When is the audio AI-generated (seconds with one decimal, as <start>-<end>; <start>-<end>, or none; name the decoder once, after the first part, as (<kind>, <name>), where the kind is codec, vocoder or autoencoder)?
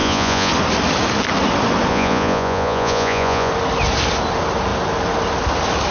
0.0-0.5 (vocoder, Vocos); 1.9-3.5